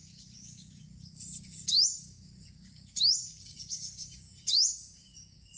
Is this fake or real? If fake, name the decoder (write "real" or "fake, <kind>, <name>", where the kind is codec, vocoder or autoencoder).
fake, codec, DAC